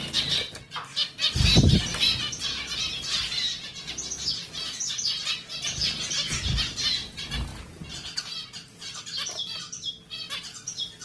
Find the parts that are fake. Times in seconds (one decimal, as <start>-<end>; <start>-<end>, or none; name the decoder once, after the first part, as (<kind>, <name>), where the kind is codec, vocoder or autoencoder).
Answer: none